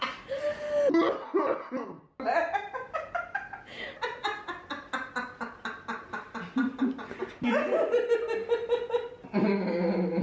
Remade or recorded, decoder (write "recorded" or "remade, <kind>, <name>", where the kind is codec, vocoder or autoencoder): recorded